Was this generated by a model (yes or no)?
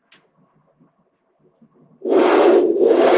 no